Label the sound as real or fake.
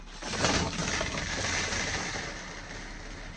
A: real